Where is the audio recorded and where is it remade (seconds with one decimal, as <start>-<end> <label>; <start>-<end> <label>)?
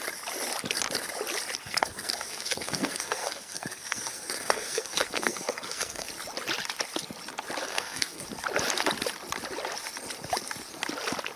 0.0-1.6 recorded; 1.6-6.1 remade; 6.1-7.6 recorded; 7.6-8.2 remade; 8.2-11.4 recorded